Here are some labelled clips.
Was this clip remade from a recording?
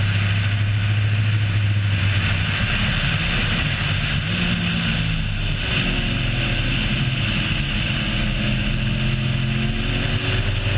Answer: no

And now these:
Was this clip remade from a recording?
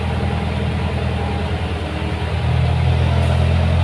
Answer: no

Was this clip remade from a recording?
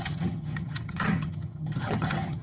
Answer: yes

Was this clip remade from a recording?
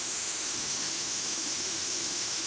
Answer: yes